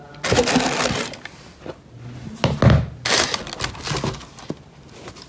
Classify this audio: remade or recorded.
recorded